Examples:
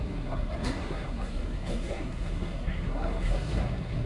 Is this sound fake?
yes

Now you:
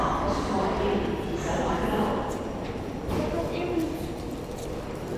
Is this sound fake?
no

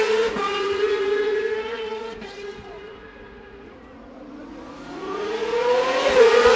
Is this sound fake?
yes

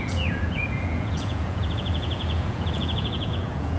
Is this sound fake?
yes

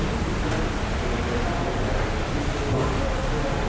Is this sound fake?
no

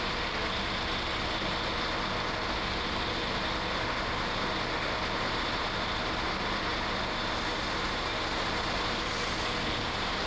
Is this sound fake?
no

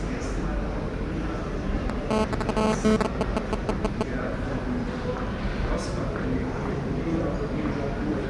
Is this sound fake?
no